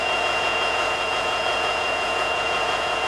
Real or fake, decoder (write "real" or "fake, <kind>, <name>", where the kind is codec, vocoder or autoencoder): fake, vocoder, Vocos